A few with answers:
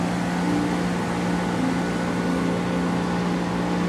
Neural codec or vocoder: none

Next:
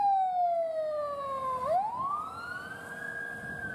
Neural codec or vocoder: none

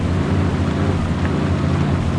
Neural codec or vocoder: none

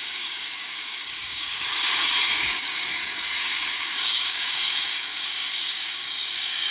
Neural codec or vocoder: codec, DAC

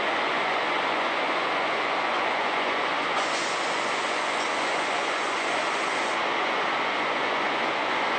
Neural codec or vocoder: vocoder, Vocos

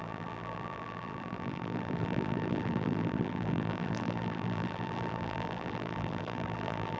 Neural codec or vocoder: vocoder, BigVGAN v2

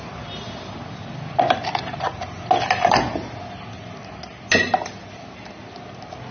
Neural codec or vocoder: none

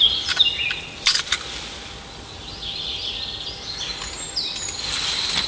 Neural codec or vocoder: none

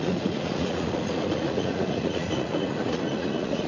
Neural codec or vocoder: vocoder, Vocos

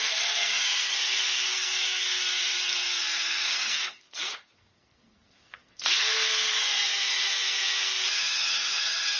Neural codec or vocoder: codec, SNAC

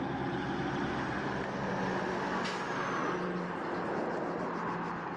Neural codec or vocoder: none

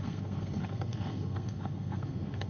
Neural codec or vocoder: codec, SNAC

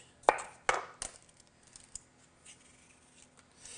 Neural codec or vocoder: none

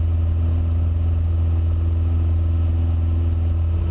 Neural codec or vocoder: none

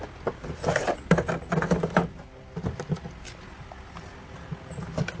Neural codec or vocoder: none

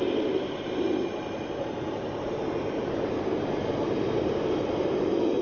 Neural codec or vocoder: vocoder, BigVGAN v2